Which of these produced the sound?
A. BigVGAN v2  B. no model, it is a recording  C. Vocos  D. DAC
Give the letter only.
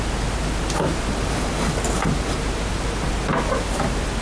B